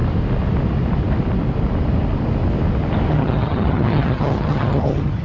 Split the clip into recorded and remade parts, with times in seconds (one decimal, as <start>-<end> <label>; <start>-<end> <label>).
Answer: 0.0-3.1 recorded; 3.1-5.2 remade